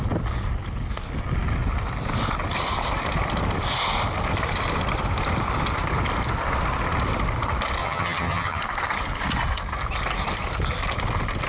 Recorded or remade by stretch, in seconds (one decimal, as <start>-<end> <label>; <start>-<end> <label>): 0.0-7.8 recorded; 7.8-8.6 remade; 8.6-11.5 recorded